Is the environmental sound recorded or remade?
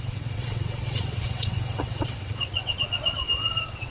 remade